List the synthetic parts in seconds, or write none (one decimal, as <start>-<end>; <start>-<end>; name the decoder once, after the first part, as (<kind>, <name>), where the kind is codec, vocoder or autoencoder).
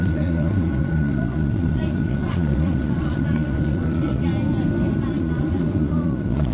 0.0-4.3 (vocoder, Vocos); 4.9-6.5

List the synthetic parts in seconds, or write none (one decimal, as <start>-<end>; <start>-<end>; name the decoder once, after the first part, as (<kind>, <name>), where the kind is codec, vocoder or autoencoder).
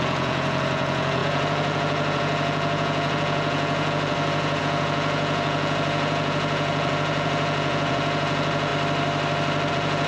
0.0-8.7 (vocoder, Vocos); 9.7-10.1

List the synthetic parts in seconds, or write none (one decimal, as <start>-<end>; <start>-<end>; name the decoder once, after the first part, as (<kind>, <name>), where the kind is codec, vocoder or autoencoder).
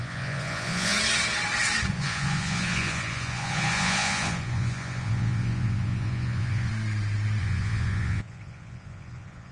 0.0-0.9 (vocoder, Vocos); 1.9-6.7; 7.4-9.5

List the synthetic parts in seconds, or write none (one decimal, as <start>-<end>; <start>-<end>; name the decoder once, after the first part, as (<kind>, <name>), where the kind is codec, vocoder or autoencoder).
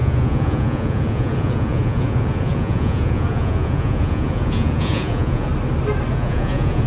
0.0-5.5 (vocoder, Vocos); 6.1-6.9